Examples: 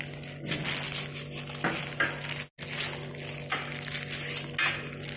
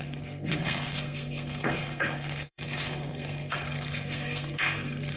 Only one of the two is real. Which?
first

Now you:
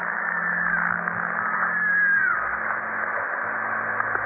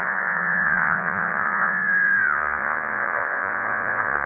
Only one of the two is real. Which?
first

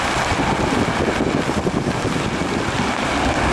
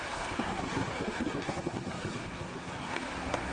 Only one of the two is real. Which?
first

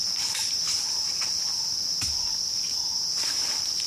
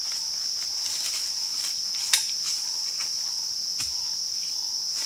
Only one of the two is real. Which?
second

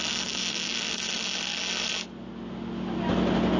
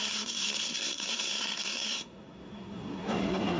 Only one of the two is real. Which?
first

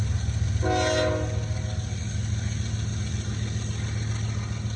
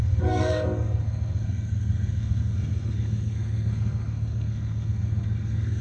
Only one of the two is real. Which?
first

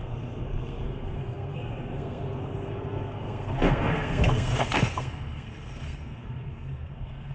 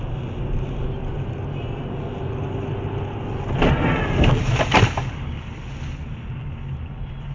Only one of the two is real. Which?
second